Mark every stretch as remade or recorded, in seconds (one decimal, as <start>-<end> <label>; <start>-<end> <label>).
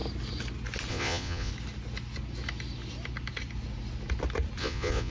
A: 0.0-0.9 recorded; 0.9-1.5 remade; 1.5-4.6 recorded; 4.6-5.1 remade